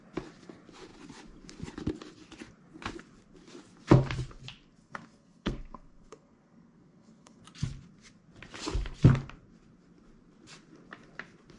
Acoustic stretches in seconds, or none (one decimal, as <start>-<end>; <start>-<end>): 0.0-4.8; 7.4-11.6